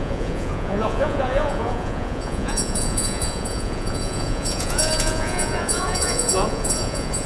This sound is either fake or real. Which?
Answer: fake